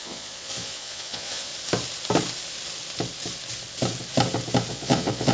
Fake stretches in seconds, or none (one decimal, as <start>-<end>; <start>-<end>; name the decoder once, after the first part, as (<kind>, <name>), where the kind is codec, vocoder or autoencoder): 0.0-1.5 (vocoder, Vocos); 4.7-5.3